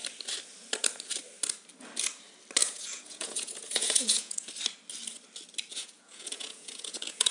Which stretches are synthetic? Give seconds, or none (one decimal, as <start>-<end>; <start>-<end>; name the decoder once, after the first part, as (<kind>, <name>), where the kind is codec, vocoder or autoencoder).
2.6-4.5 (vocoder, Vocos); 5.7-7.3